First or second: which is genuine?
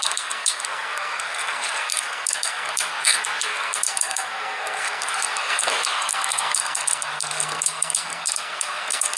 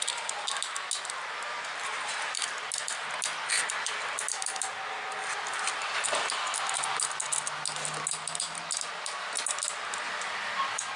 second